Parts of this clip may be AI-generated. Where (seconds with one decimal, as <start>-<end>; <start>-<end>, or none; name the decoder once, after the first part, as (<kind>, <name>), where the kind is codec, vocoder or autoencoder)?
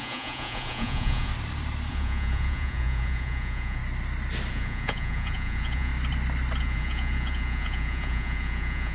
0.0-1.3 (vocoder, Vocos); 1.9-3.8; 4.5-5.9; 6.6-8.9